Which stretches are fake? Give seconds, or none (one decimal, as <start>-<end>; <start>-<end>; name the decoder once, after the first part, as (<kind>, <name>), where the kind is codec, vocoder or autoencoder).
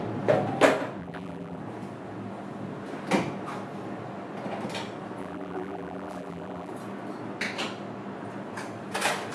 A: 1.0-1.6 (vocoder, BigVGAN v2); 5.2-6.7